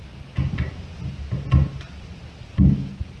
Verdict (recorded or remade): recorded